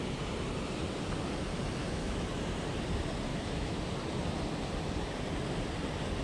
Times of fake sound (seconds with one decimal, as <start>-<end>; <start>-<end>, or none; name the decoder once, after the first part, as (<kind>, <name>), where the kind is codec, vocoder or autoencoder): 1.8-2.3 (autoencoder, DAC-VAE); 3.3-3.8